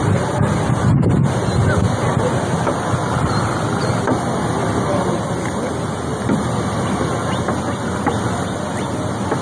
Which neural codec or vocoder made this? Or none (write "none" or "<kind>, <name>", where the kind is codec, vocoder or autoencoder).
vocoder, BigVGAN v2